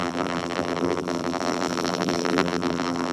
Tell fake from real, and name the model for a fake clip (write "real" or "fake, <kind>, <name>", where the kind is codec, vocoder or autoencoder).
fake, vocoder, BigVGAN v2